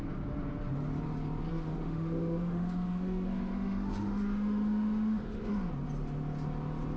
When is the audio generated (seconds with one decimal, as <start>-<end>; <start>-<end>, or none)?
1.5-5.7